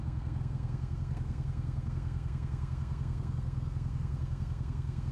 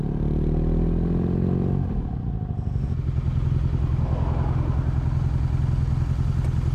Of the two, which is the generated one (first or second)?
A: first